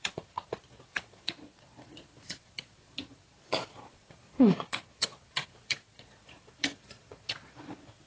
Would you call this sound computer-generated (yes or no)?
yes